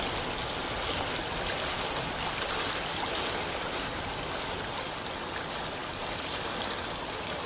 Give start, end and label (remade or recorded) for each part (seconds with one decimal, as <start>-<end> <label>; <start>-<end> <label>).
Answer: 0.0-7.5 recorded